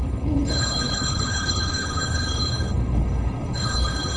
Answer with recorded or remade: remade